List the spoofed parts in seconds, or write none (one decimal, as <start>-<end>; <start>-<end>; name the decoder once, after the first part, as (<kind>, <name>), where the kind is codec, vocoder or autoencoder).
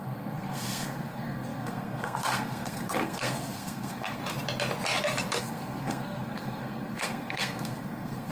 0.0-4.2 (codec, SNAC); 5.4-8.3